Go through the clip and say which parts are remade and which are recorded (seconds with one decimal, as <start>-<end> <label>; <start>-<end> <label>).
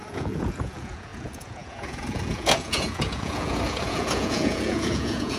0.0-5.4 remade